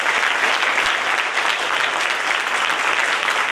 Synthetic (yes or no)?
no